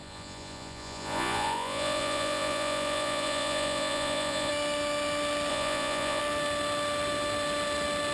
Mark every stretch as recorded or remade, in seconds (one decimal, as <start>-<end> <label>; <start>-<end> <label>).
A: 0.0-4.5 remade; 4.5-5.5 recorded; 5.5-6.2 remade; 6.2-8.1 recorded